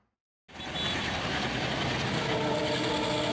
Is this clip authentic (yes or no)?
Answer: yes